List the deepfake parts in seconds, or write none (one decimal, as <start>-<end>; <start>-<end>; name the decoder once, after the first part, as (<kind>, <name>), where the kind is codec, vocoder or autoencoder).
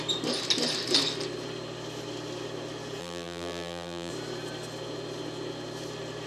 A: 3.0-4.1 (vocoder, BigVGAN v2)